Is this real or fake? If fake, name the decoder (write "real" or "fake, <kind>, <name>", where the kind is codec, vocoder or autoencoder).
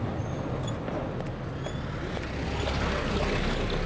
real